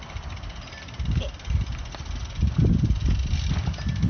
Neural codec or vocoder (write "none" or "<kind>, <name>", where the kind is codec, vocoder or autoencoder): none